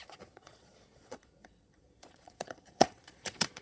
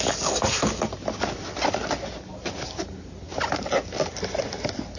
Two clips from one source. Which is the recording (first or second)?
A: second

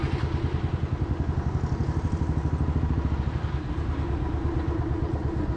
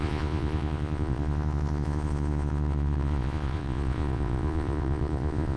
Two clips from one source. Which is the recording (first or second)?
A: first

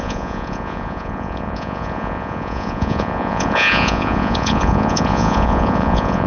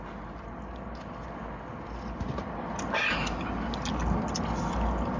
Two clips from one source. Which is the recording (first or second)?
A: second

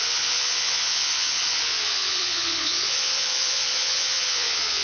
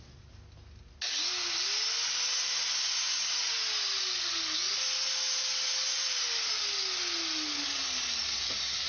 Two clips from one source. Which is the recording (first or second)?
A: second